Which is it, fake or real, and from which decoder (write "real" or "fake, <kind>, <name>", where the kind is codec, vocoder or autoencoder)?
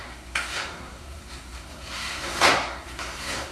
fake, codec, SNAC